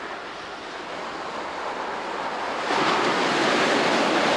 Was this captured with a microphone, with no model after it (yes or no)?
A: yes